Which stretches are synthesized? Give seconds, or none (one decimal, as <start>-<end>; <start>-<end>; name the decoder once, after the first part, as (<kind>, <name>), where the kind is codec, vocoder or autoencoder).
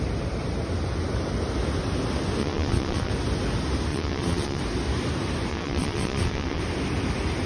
2.4-3.1 (vocoder, WaveNeXt); 3.9-4.6; 5.5-6.6